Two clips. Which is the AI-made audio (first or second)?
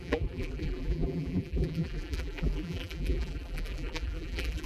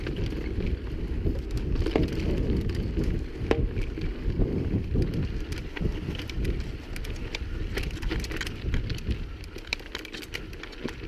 first